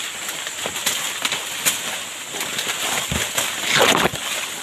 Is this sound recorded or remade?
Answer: recorded